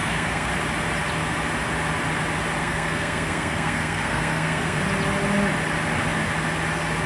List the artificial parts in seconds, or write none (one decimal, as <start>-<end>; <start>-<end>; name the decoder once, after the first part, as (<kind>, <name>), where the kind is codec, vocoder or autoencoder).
0.0-0.5 (codec, SNAC); 2.6-4.8